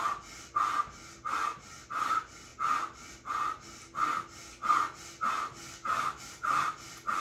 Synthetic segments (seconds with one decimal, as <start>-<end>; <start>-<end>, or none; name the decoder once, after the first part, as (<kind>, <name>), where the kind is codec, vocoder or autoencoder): none